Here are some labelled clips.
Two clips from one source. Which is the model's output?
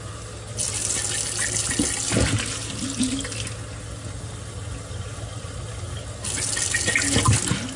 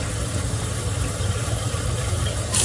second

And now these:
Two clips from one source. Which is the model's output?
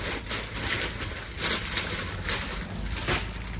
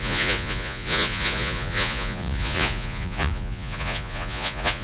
second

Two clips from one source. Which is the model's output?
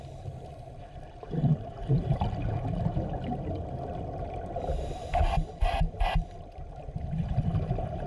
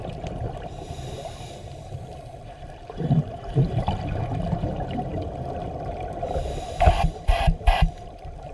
second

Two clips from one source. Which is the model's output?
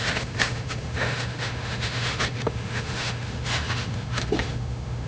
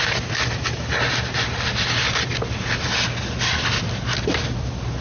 first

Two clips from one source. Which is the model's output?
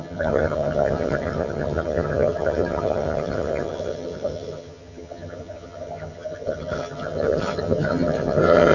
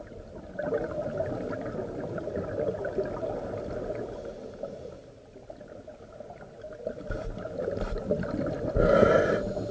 first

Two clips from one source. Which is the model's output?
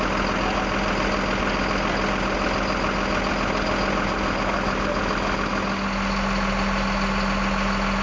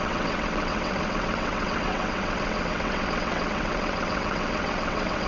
second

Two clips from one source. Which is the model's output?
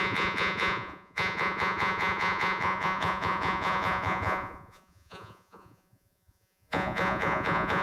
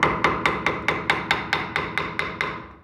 first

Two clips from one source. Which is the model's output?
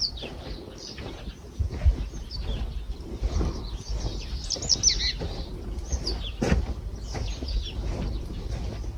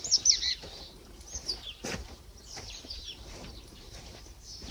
second